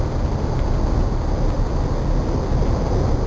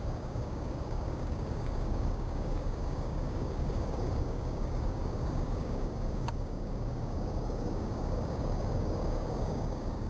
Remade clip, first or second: second